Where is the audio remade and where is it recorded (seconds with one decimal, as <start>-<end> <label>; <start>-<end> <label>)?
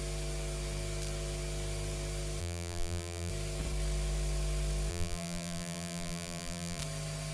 0.0-2.4 recorded; 2.4-3.3 remade; 3.3-4.9 recorded; 4.9-6.8 remade; 6.8-7.3 recorded